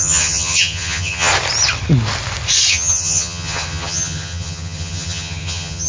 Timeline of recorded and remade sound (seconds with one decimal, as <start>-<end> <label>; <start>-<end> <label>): 0.0-1.3 remade; 1.3-2.7 recorded; 2.7-5.9 remade